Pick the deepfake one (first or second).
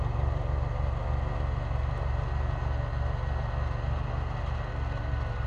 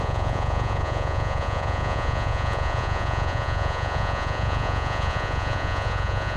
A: second